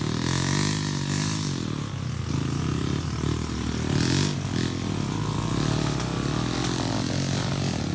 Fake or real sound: real